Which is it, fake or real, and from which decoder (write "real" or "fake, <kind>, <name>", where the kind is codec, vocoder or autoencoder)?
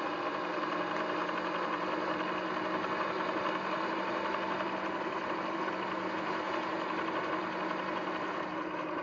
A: real